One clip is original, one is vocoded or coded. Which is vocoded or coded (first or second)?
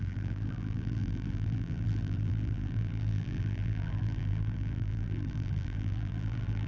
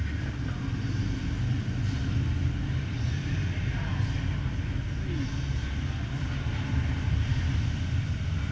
first